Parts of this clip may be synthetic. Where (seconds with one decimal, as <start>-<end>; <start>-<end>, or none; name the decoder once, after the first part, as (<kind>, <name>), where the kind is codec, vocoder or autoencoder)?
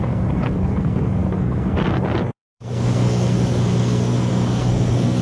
0.0-5.2 (codec, SNAC)